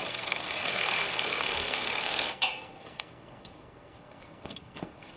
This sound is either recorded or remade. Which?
remade